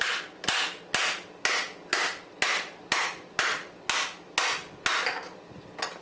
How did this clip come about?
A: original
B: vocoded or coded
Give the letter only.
A